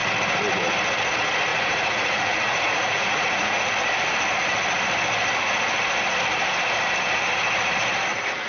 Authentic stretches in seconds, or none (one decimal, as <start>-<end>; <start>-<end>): 0.0-1.5; 3.7-8.5